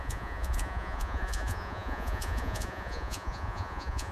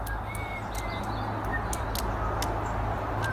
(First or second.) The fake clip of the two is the first